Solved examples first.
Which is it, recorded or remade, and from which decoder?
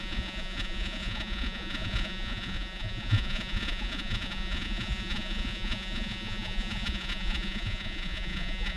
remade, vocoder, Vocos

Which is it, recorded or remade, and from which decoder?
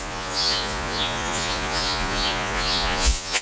remade, vocoder, Vocos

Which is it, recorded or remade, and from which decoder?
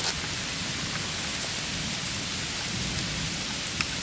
recorded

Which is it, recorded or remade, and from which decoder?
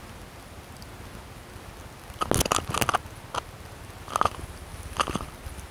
recorded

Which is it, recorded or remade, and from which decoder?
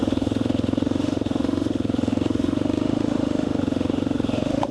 remade, autoencoder, DAC-VAE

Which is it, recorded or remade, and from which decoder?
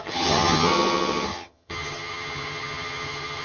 remade, vocoder, HiFi-GAN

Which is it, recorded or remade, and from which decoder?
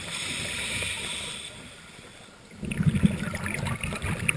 recorded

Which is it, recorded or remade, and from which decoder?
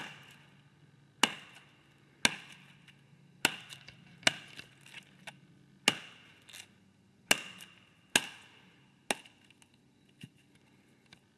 recorded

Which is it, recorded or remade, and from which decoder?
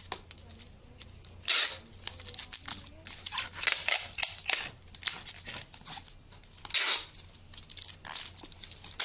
recorded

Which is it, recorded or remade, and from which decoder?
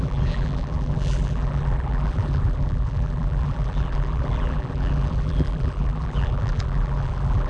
remade, vocoder, BigVGAN v2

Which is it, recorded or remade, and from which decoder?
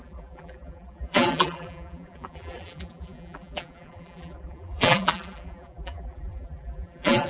remade, vocoder, BigVGAN v2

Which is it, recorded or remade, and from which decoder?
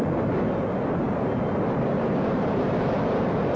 recorded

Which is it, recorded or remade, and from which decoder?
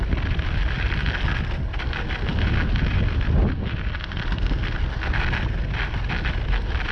recorded